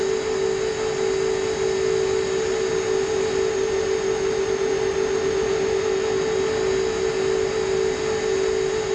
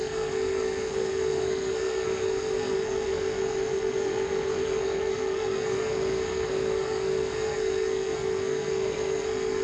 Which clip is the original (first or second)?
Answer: first